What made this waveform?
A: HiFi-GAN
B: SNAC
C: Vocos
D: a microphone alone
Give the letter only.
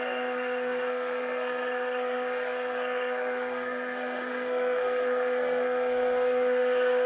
B